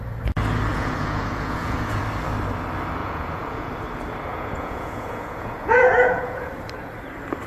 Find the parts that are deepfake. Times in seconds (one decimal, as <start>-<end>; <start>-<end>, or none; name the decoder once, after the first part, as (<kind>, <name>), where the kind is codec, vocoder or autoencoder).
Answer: 0.7-2.0 (vocoder, Vocos); 3.0-3.7; 4.3-6.5